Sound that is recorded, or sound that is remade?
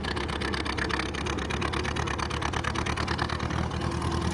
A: recorded